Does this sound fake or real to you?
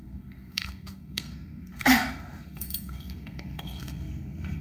fake